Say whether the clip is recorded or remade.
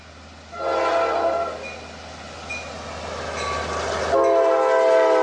recorded